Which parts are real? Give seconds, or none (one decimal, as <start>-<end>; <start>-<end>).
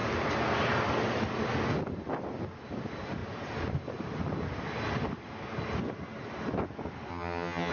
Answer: 0.0-7.1